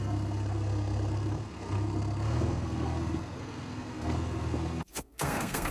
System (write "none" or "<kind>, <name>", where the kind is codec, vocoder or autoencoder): codec, SNAC